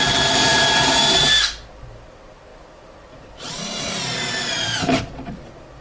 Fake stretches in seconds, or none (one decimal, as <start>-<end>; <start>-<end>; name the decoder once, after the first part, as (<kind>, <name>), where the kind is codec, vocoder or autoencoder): 2.5-5.0 (vocoder, BigVGAN v2)